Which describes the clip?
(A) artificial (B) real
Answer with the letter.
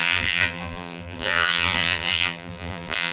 A